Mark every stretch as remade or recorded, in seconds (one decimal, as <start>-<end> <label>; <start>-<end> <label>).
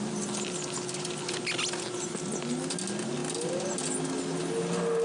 0.0-5.0 recorded